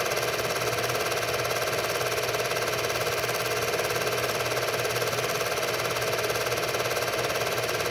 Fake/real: real